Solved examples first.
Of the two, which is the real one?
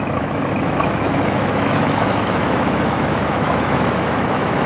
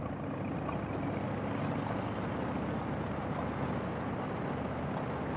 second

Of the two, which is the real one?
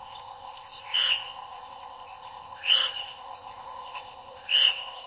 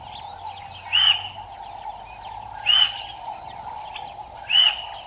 second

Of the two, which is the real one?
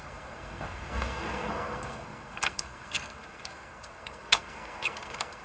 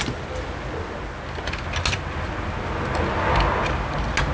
second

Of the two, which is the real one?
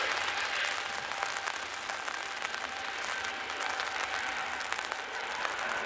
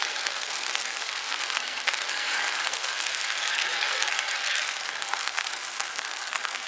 first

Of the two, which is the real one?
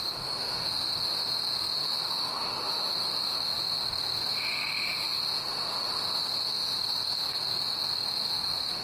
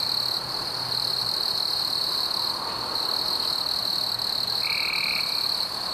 second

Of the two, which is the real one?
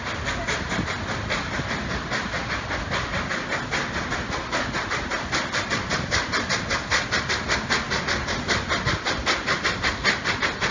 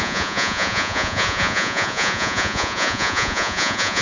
first